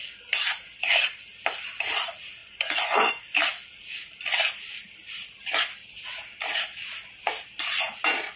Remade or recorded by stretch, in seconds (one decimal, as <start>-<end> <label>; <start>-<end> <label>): 0.0-2.4 recorded; 2.4-3.1 remade; 3.1-8.4 recorded